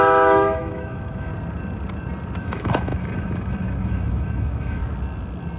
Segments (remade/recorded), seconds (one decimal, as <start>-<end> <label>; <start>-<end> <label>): 0.0-1.3 remade; 1.3-2.4 recorded; 2.4-4.8 remade; 4.8-5.6 recorded